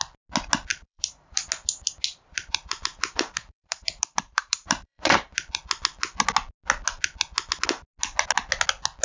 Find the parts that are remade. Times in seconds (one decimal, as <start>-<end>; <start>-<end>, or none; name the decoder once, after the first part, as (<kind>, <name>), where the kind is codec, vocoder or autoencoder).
0.7-1.4 (vocoder, BigVGAN v2); 2.1-5.6